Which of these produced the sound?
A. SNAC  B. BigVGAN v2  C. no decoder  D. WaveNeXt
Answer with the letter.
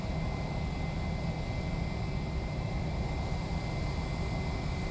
C